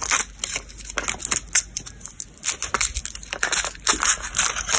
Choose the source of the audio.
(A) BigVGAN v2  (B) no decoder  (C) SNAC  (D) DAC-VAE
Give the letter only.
B